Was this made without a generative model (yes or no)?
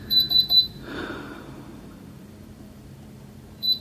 no